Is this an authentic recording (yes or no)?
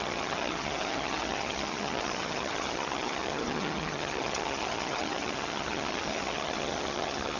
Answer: no